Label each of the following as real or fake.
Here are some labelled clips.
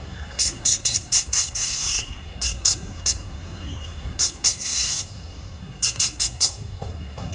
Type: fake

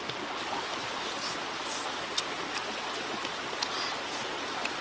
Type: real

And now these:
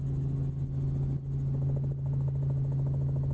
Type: real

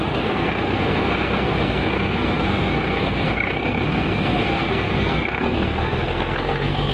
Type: fake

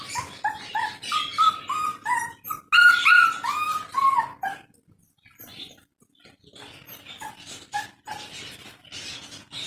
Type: real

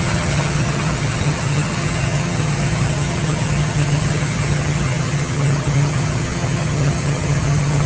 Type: fake